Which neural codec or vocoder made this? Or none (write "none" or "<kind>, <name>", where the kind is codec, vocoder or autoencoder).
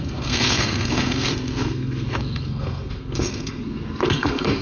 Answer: codec, SNAC